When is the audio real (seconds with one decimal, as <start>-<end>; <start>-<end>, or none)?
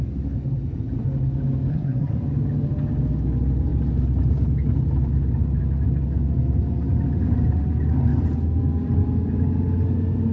0.0-1.7; 2.2-10.3